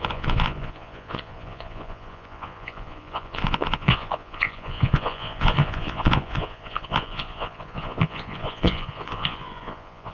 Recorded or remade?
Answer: remade